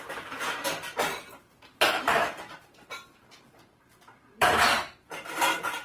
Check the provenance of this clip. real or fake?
fake